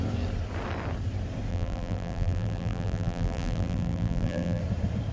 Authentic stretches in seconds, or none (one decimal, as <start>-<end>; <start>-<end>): 0.0-1.5; 4.6-5.1